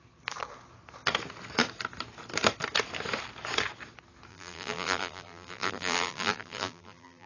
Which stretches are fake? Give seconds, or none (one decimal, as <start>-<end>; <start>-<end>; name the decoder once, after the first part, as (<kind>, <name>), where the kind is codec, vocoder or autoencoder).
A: 4.3-7.3 (vocoder, BigVGAN v2)